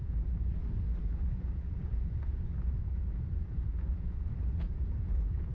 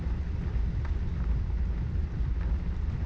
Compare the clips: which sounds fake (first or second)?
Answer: first